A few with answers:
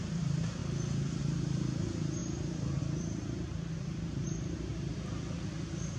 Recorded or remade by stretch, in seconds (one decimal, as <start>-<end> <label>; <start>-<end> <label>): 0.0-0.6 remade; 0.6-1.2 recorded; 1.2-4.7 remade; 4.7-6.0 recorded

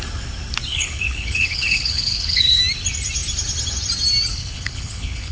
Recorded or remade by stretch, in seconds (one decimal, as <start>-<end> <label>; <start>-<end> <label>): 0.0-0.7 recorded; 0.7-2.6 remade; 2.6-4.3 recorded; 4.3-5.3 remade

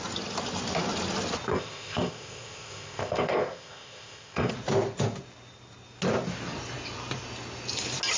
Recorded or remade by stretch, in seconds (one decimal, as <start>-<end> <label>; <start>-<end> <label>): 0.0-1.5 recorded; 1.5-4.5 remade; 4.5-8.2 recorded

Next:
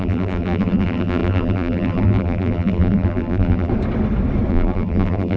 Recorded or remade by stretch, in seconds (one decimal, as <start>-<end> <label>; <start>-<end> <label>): 0.0-3.7 remade; 3.7-4.5 recorded; 4.5-5.4 remade